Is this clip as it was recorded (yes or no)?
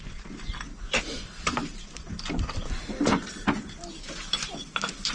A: yes